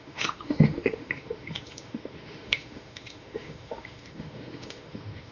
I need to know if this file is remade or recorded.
remade